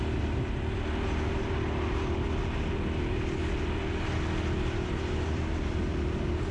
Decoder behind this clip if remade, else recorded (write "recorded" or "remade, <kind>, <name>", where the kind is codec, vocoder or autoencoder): recorded